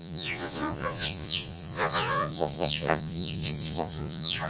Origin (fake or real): fake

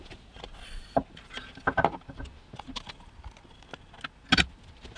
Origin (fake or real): real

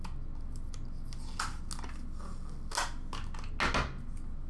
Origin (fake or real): real